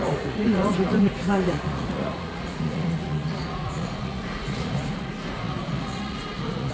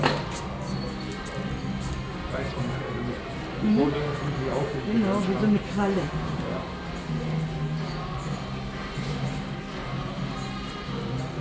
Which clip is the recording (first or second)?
second